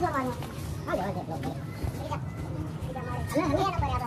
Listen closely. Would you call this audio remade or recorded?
recorded